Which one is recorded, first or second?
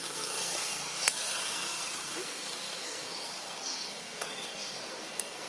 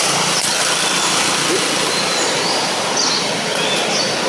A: second